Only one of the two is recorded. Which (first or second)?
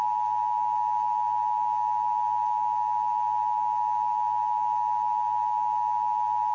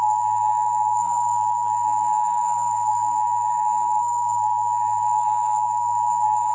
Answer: first